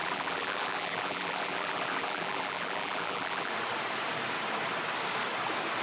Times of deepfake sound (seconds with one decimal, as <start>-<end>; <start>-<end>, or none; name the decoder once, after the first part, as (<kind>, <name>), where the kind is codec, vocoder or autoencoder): 0.0-3.5 (vocoder, BigVGAN v2)